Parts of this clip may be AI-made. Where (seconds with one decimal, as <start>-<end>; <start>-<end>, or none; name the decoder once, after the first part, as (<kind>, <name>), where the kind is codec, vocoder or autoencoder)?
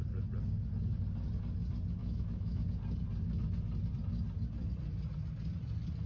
2.0-2.6 (autoencoder, DAC-VAE)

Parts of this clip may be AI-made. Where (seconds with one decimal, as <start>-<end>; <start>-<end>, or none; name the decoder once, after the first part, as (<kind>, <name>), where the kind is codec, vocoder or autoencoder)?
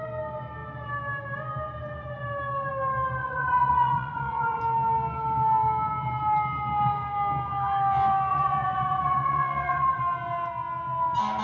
3.2-4.6 (vocoder, Vocos); 8.3-10.0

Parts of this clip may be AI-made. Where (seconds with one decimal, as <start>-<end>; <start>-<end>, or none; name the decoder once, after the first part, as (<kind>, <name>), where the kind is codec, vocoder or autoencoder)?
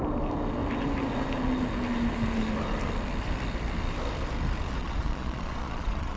4.8-6.2 (vocoder, Vocos)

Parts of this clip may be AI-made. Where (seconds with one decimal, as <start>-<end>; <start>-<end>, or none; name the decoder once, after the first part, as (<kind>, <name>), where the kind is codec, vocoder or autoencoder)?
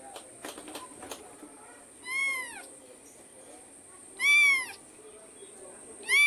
0.4-4.2 (vocoder, BigVGAN v2)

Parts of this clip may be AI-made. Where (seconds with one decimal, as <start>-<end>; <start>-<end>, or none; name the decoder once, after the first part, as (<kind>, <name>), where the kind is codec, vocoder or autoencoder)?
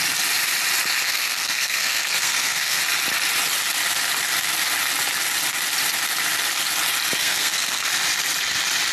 1.0-2.8 (codec, SNAC); 7.2-7.9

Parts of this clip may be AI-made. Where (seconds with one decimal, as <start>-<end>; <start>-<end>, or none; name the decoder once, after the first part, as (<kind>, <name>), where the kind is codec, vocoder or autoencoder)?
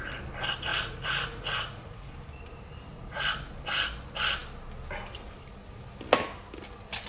0.7-2.1 (vocoder, Vocos); 2.9-3.4